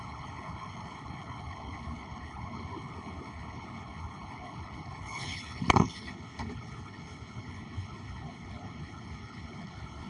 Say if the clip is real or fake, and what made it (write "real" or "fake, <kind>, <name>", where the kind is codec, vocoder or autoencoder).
fake, codec, HILCodec